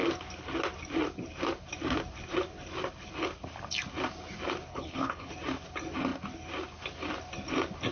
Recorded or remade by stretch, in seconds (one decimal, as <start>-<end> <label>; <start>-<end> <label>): 0.0-4.7 recorded; 4.7-5.3 remade; 5.3-7.9 recorded